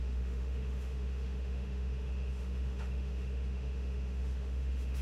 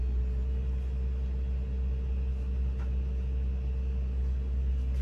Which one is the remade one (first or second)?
first